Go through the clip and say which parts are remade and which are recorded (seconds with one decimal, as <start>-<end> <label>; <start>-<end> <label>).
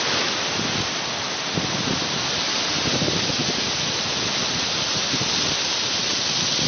0.0-6.7 recorded